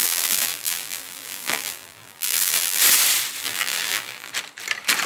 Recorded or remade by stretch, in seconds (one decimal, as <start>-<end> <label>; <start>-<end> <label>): 0.0-2.8 remade; 2.8-3.4 recorded; 3.4-4.3 remade; 4.3-5.1 recorded